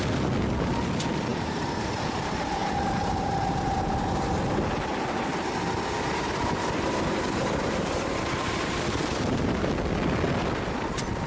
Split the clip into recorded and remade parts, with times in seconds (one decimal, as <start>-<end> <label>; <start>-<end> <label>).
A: 0.0-1.3 recorded; 1.3-1.9 remade; 1.9-2.6 recorded; 2.6-3.6 remade; 3.6-4.9 recorded; 4.9-9.7 remade; 9.7-11.3 recorded